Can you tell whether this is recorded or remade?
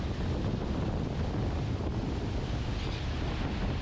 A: recorded